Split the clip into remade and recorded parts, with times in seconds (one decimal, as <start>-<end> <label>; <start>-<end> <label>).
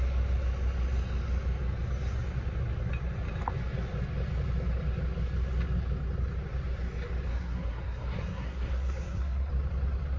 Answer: 0.0-7.3 recorded; 7.3-9.5 remade; 9.5-10.2 recorded